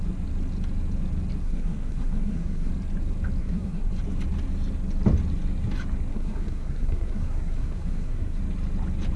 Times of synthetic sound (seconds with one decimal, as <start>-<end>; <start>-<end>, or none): 1.4-2.7; 3.4-3.9; 6.1-8.4